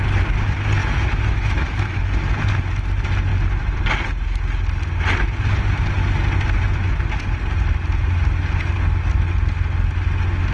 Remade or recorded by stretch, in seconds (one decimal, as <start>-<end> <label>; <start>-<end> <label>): 0.0-0.8 recorded; 0.8-2.0 remade; 2.0-10.5 recorded

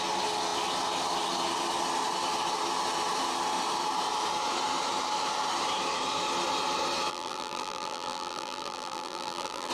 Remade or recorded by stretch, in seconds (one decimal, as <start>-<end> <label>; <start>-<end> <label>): 0.0-7.1 recorded; 7.1-9.7 remade

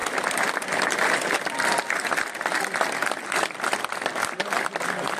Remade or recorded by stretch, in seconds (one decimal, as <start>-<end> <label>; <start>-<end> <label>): 0.0-5.2 recorded

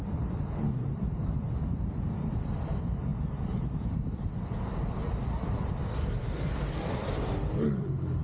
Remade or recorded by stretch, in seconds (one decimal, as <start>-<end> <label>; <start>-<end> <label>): 0.0-3.1 remade; 3.1-5.2 recorded; 5.2-8.2 remade